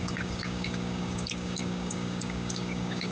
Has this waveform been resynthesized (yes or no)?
yes